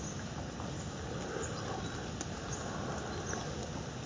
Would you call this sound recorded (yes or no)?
yes